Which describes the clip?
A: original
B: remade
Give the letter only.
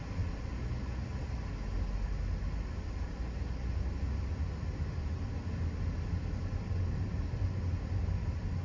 A